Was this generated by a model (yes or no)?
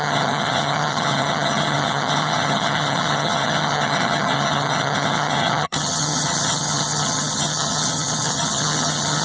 yes